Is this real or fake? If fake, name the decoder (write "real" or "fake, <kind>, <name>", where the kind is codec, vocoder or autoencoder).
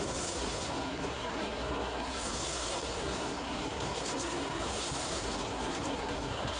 fake, codec, SNAC